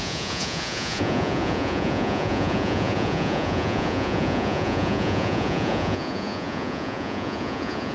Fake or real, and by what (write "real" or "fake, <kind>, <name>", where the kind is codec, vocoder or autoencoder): fake, vocoder, Vocos